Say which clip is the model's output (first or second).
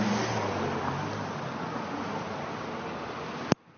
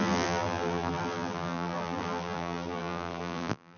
second